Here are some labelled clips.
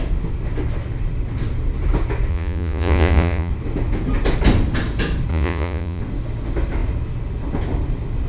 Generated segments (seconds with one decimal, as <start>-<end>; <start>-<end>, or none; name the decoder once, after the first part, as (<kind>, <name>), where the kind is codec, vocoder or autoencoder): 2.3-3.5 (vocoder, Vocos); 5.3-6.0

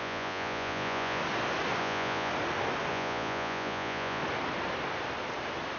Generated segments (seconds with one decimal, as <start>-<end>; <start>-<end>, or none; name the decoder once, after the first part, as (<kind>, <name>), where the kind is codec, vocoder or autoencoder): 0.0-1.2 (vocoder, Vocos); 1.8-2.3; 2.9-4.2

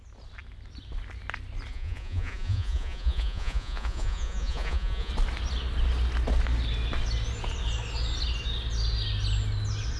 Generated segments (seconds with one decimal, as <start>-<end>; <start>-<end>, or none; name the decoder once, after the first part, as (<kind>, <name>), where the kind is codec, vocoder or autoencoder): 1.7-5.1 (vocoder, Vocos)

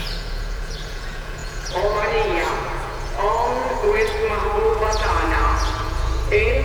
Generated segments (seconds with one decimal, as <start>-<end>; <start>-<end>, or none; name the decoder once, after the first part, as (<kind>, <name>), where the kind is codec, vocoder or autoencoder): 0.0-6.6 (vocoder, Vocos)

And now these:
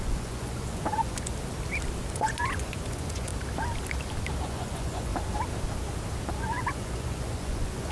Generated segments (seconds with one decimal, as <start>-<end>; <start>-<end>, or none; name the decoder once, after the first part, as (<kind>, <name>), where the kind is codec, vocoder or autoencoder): 0.0-1.3 (vocoder, Vocos); 2.1-3.3; 4.4-5.1; 6.3-7.9

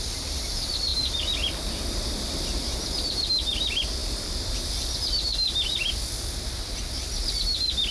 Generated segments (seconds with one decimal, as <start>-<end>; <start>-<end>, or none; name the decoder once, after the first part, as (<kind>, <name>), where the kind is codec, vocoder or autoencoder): none